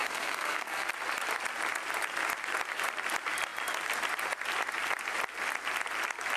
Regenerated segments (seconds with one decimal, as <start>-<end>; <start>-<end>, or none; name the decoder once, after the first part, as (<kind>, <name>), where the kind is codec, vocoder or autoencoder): 0.0-0.9 (codec, SNAC)